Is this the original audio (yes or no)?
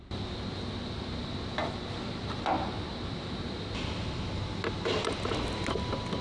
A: yes